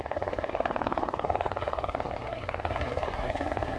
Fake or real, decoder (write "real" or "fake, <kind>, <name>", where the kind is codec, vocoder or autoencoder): fake, codec, SNAC